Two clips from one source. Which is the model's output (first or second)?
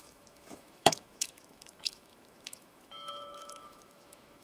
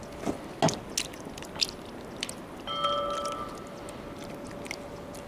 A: first